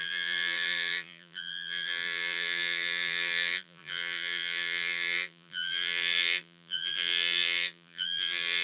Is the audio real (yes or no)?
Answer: no